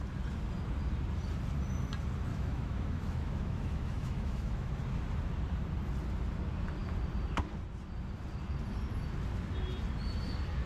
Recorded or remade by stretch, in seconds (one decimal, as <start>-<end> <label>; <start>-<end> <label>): 0.0-2.3 recorded; 2.3-4.7 remade; 4.7-10.7 recorded